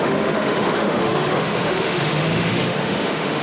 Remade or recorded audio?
remade